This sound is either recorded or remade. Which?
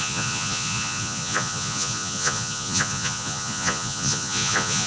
remade